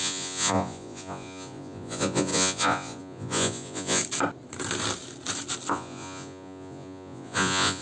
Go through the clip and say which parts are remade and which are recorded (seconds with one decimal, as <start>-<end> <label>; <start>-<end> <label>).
0.0-4.0 remade; 4.0-5.7 recorded; 5.7-7.8 remade